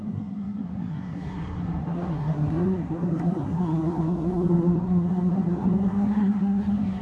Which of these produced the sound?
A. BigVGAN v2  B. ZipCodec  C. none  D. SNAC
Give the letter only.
D